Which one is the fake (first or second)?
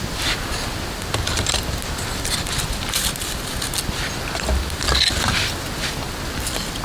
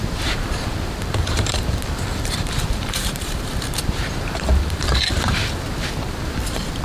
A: second